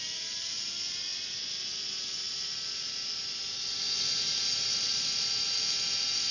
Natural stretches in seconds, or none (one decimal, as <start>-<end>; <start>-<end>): 0.0-6.3

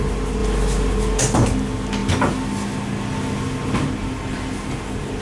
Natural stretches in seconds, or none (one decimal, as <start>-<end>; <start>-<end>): 0.0-5.2

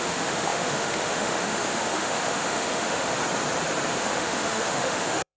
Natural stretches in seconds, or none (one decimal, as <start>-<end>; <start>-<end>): 3.1-4.0